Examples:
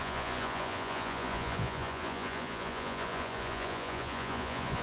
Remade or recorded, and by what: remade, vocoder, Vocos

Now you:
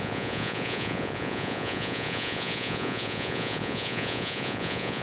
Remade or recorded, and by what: remade, vocoder, Vocos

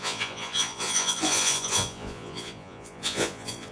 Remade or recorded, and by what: remade, vocoder, Vocos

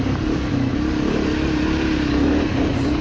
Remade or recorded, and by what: recorded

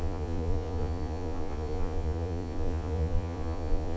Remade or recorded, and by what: remade, vocoder, Vocos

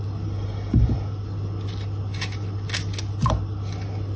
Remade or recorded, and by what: recorded